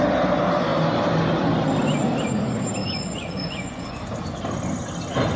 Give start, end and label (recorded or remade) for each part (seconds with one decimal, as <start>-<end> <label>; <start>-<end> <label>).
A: 0.0-2.8 recorded; 2.8-4.1 remade; 4.1-5.4 recorded